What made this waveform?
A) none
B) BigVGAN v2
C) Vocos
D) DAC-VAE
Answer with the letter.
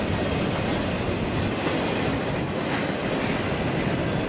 A